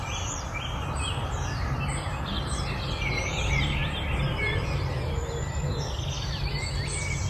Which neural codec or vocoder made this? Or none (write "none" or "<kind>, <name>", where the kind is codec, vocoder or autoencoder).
none